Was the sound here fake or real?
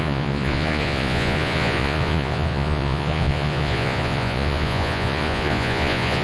fake